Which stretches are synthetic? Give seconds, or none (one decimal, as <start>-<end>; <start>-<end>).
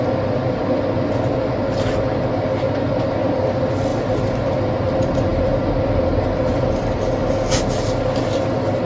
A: 3.9-4.5